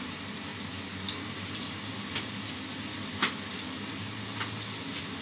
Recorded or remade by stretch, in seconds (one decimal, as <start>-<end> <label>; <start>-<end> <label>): 0.0-5.2 recorded